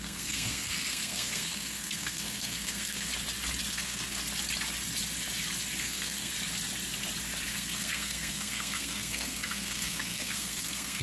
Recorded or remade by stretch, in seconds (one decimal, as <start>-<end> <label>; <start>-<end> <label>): 0.0-3.1 remade; 3.1-3.7 recorded; 3.7-4.2 remade; 4.2-5.8 recorded; 5.8-6.3 remade; 6.3-7.5 recorded; 7.5-11.0 remade